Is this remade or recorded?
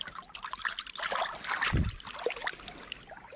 recorded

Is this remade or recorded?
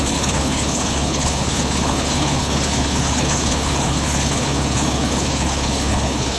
remade